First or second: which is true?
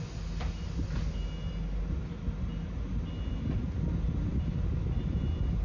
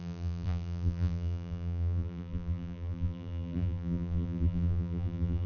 first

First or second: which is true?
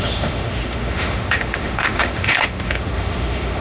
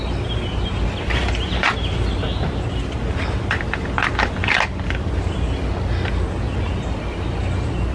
second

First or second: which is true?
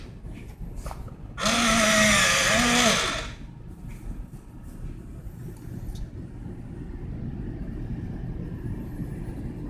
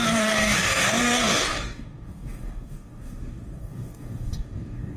first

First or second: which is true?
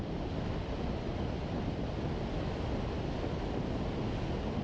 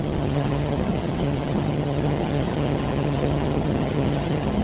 first